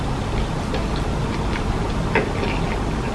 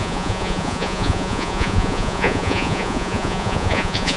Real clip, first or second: first